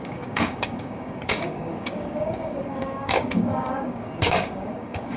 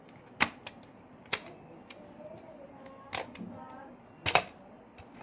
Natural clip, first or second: second